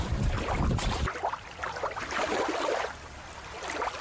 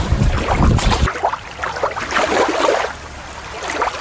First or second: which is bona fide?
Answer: second